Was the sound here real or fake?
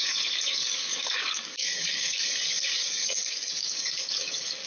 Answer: fake